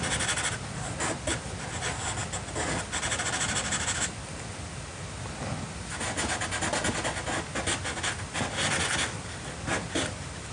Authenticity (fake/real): real